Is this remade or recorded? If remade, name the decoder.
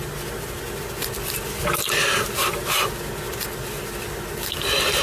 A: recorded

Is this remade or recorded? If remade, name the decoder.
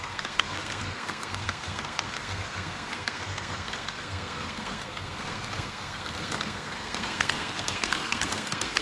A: remade, codec, SNAC